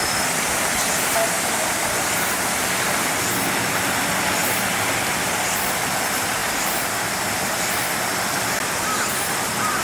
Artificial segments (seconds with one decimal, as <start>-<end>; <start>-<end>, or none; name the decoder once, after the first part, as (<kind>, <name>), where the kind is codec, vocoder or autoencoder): none